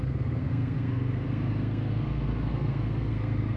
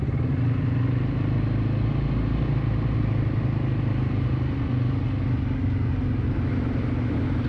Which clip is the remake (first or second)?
first